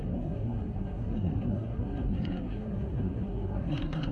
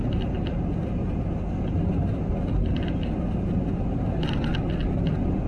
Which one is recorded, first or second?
second